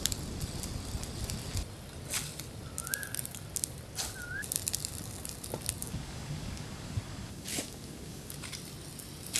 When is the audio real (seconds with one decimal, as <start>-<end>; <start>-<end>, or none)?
0.0-5.8; 8.5-9.4